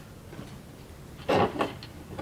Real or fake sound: real